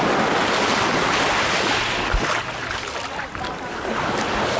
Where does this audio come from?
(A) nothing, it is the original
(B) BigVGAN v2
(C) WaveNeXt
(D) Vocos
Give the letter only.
A